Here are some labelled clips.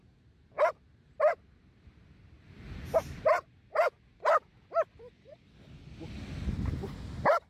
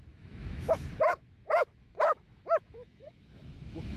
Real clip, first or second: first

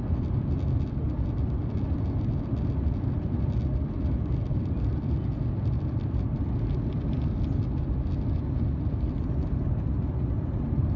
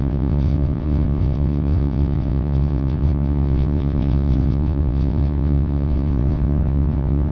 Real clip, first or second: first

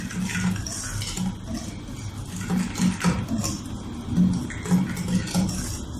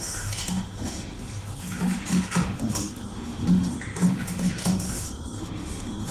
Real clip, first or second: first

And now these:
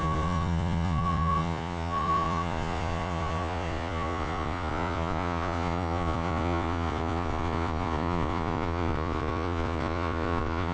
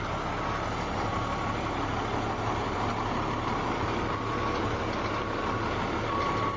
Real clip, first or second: second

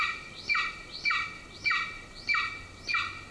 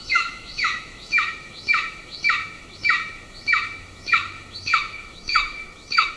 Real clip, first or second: first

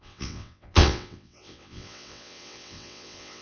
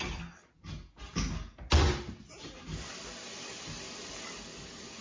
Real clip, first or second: second